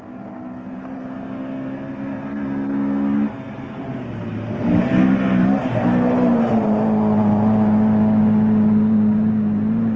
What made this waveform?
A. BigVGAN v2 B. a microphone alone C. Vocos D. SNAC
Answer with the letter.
B